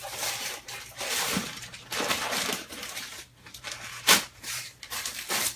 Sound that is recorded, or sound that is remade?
remade